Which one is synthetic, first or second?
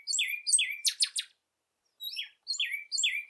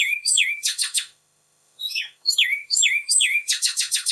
second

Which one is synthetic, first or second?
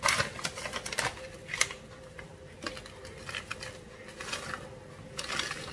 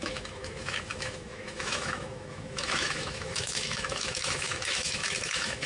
second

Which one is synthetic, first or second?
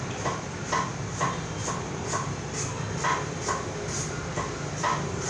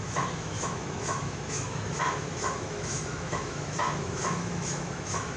second